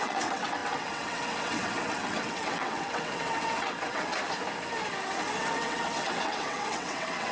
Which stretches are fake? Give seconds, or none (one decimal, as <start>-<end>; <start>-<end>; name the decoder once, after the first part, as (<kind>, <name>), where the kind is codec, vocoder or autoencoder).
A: 0.0-4.1 (vocoder, WaveNeXt); 5.4-7.3